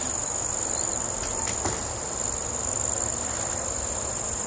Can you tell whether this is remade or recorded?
recorded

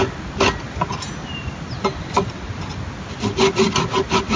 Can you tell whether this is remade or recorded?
recorded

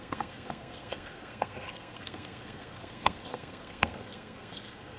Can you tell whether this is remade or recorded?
remade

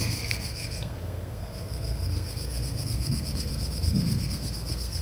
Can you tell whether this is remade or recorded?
remade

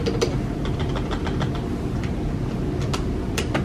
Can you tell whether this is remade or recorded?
recorded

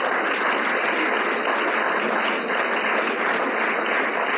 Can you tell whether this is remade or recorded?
recorded